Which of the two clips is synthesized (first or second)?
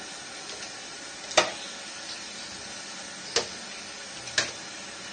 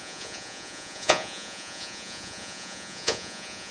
second